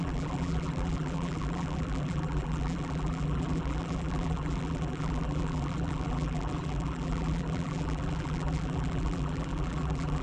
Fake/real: fake